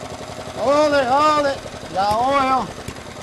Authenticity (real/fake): real